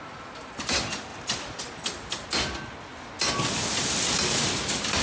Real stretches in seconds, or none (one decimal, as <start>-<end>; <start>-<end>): 0.0-1.1; 1.6-5.0